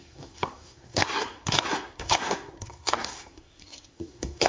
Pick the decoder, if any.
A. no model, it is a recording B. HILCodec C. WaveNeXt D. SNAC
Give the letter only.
D